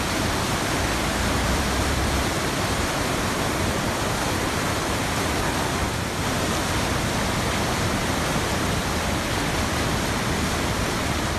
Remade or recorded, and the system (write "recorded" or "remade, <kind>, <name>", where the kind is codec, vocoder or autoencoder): recorded